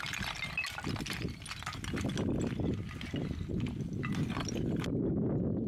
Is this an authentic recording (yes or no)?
yes